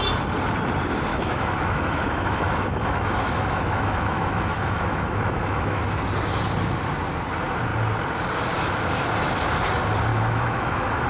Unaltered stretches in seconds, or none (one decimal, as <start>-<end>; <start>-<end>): 0.0-1.1; 5.8-10.1